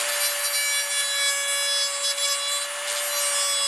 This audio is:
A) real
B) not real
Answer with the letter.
A